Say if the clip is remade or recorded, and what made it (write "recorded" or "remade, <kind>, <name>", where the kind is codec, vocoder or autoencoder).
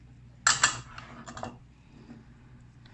recorded